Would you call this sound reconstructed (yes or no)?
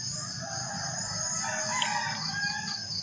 no